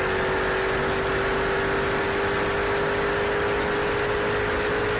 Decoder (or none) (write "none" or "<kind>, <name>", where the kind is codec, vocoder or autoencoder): none